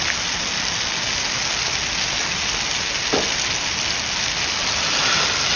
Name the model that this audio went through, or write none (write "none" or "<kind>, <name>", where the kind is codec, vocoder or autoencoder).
none